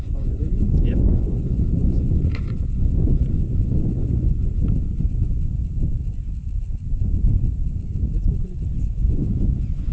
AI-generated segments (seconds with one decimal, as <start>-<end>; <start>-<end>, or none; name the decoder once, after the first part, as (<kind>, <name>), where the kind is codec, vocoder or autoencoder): 0.0-5.6 (vocoder, Vocos); 8.8-9.9